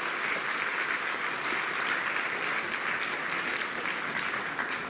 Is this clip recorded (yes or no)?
yes